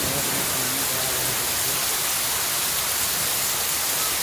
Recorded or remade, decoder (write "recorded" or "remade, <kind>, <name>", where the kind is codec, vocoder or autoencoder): recorded